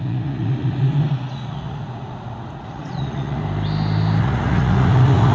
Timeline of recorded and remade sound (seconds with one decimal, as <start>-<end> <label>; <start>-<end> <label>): 0.0-3.4 remade; 3.4-4.2 recorded; 4.2-5.3 remade